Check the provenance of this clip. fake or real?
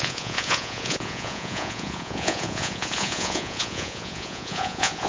fake